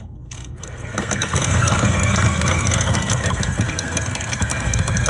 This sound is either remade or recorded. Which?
remade